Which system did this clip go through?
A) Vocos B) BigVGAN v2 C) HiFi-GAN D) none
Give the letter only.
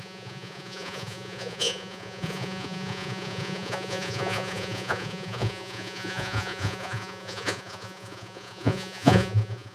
A